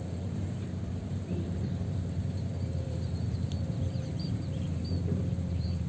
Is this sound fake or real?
fake